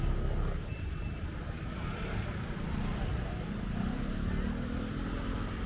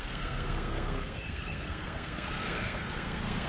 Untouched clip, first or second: first